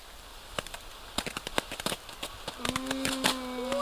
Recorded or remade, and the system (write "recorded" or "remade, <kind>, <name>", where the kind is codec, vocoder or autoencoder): recorded